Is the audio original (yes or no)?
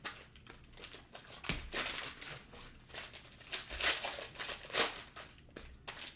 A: yes